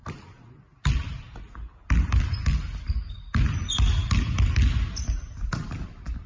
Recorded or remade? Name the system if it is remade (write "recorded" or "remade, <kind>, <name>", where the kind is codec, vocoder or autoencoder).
recorded